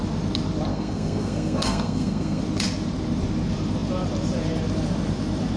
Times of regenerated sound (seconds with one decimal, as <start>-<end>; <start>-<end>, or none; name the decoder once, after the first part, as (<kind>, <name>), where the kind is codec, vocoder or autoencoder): 0.7-2.4 (codec, SNAC)